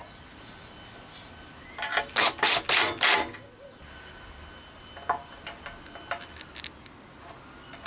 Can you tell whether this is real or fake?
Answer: real